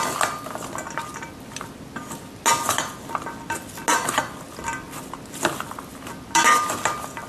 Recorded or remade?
recorded